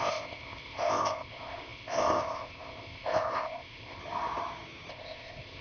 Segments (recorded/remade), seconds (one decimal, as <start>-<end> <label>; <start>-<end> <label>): 0.0-4.0 remade; 4.0-4.9 recorded; 4.9-5.6 remade